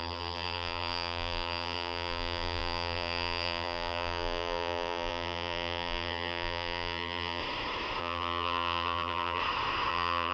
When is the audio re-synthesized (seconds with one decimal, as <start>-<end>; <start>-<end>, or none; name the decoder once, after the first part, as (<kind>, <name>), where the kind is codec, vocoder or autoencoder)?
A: 0.0-7.4 (vocoder, BigVGAN v2); 8.0-9.4; 9.9-10.3